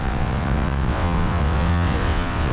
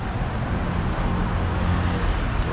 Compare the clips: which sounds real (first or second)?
second